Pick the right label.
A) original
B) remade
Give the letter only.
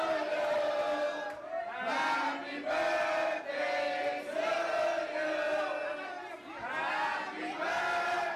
A